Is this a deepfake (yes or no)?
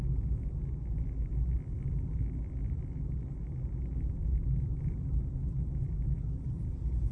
no